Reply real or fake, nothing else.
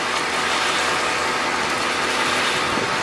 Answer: real